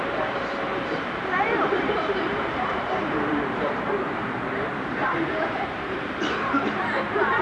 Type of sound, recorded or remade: remade